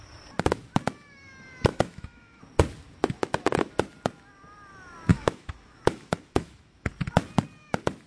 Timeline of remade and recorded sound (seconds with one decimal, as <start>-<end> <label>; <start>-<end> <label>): 0.0-1.7 recorded; 1.7-2.4 remade; 2.4-5.1 recorded; 5.1-6.9 remade; 6.9-8.1 recorded